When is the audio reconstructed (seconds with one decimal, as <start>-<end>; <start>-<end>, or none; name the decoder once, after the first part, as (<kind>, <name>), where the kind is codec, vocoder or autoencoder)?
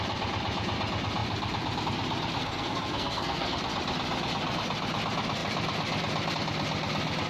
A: 2.4-3.6 (codec, SNAC)